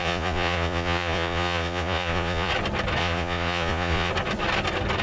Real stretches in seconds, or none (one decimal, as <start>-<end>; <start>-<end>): 2.5-3.0; 4.1-5.0